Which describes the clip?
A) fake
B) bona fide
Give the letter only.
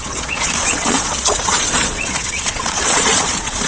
A